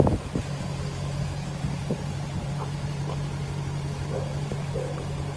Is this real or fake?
real